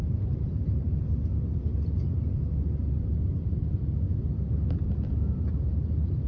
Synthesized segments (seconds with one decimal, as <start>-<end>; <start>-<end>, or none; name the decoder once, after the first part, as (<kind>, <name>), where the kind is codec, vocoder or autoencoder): 0.0-1.3 (vocoder, BigVGAN v2); 2.0-2.8; 4.7-6.3